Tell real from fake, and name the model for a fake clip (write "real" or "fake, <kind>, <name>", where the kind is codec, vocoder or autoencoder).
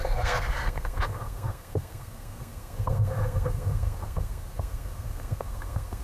fake, codec, SNAC